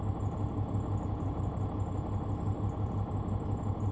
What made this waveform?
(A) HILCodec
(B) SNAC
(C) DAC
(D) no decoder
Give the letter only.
D